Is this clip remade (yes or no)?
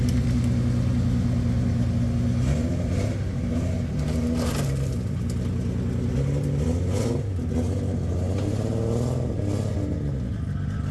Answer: no